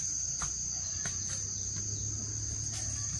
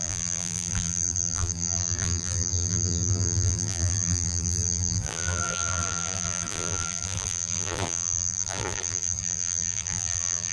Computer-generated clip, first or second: second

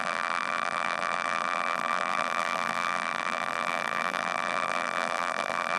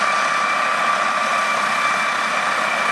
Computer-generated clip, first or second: first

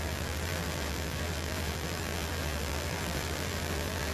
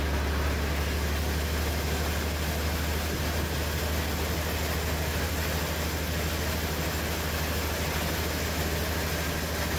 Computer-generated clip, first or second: first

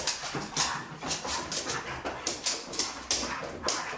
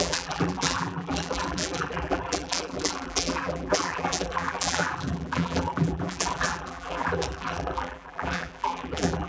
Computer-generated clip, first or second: second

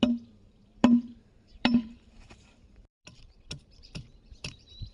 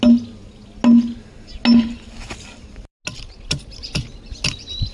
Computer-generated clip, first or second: first